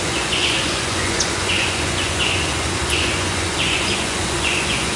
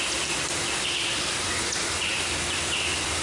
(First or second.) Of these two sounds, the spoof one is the first